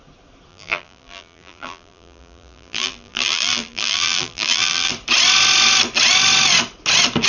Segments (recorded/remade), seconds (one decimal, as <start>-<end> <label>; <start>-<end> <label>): 0.0-0.5 recorded; 0.5-4.9 remade; 4.9-7.3 recorded